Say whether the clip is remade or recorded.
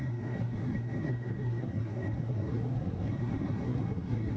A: remade